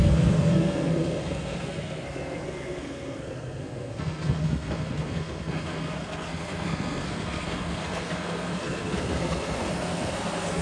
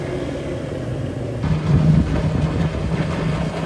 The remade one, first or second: first